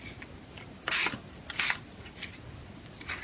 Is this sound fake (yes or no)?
no